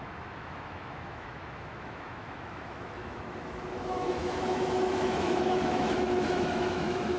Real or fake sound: fake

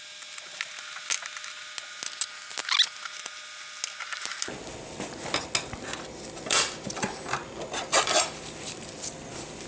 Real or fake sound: real